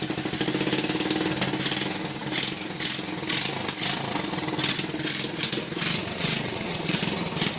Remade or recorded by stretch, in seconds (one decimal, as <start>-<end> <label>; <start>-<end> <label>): 0.0-6.0 recorded; 6.0-7.0 remade; 7.0-7.6 recorded